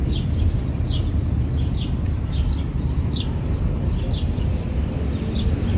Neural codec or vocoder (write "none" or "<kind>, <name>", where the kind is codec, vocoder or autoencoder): none